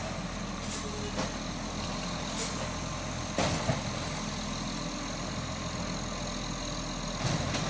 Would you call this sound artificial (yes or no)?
no